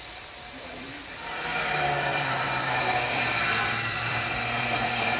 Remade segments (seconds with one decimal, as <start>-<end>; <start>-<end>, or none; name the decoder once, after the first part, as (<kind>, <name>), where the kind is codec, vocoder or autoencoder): 0.0-5.2 (vocoder, BigVGAN v2)